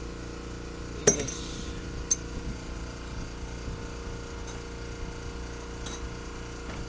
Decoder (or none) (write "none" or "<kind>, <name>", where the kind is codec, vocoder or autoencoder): none